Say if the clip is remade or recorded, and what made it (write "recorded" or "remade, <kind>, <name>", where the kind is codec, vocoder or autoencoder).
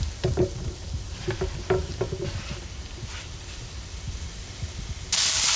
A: recorded